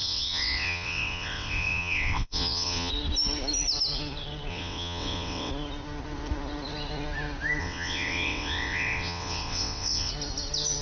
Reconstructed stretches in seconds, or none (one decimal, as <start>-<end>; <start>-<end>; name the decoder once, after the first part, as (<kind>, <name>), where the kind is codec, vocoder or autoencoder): 0.0-2.9 (vocoder, WaveNeXt); 4.5-5.5; 7.6-10.1